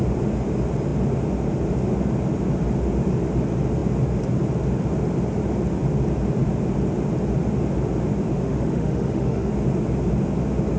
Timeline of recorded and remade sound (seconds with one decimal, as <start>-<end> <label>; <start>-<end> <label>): 0.0-8.3 recorded; 8.3-9.5 remade; 9.5-10.8 recorded